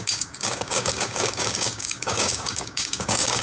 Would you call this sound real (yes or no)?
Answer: no